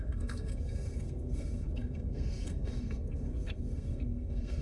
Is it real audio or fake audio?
fake